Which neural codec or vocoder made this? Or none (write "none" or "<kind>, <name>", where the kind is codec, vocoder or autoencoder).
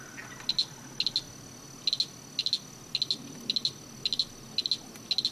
none